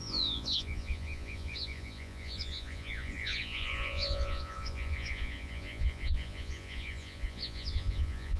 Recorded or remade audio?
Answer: remade